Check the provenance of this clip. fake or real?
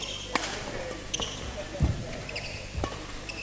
real